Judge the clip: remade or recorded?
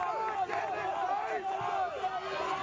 recorded